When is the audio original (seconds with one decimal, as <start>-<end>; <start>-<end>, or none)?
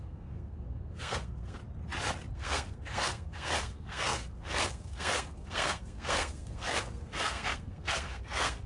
1.6-2.3